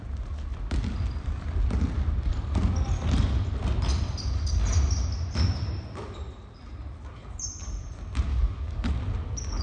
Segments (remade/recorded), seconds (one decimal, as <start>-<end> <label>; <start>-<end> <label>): 0.0-8.3 recorded; 8.3-8.9 remade; 8.9-9.6 recorded